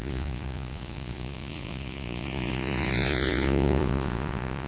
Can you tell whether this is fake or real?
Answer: fake